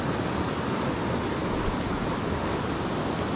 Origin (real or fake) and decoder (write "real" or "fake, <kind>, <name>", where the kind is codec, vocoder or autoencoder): real